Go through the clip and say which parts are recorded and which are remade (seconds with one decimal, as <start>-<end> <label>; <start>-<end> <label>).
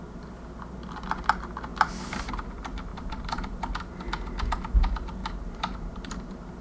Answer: 0.0-2.9 recorded; 2.9-3.6 remade; 3.6-5.2 recorded; 5.2-6.6 remade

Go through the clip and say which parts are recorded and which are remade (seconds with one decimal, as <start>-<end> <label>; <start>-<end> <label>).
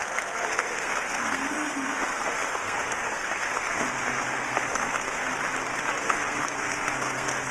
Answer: 0.0-5.3 remade; 5.3-6.0 recorded; 6.0-7.5 remade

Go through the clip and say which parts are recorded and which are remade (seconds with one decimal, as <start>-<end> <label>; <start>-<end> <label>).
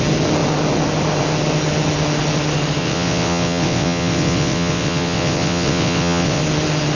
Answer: 0.0-2.8 recorded; 2.8-6.4 remade; 6.4-7.0 recorded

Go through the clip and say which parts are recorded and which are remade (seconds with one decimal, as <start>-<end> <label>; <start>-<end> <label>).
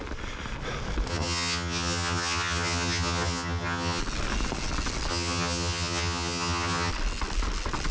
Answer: 0.0-1.1 recorded; 1.1-4.0 remade; 4.0-5.1 recorded; 5.1-6.9 remade; 6.9-7.9 recorded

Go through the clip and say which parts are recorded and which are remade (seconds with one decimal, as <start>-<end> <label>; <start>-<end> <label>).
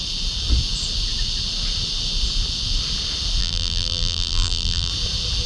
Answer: 0.0-3.4 recorded; 3.4-4.9 remade; 4.9-5.5 recorded